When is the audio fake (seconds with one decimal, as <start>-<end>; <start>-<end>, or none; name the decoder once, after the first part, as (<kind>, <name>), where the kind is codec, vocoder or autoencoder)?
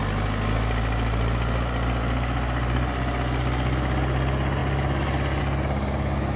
none